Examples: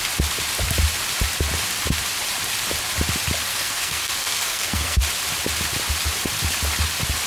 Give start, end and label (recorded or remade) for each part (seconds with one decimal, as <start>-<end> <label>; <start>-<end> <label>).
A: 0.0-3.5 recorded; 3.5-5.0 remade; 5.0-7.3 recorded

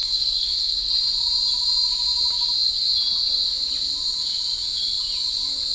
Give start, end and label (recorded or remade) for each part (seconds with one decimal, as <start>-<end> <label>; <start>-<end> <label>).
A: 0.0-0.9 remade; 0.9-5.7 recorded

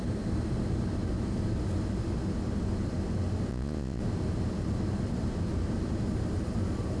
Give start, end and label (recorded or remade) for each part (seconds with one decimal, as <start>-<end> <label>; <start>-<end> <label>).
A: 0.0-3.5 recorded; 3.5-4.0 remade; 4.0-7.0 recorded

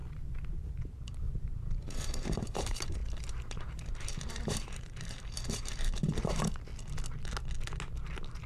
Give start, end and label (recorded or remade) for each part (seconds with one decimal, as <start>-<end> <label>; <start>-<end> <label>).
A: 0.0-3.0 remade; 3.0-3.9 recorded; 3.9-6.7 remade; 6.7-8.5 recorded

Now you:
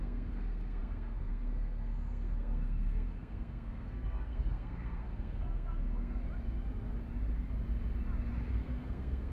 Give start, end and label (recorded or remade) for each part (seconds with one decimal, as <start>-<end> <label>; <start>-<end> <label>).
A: 0.0-6.2 remade; 6.2-8.5 recorded; 8.5-9.3 remade

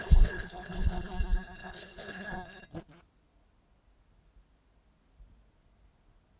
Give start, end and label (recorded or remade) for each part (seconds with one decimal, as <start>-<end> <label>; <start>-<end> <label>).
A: 0.0-1.0 remade; 1.0-1.6 recorded; 1.6-2.1 remade; 2.1-6.4 recorded